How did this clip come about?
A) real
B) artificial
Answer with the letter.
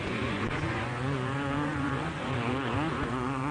B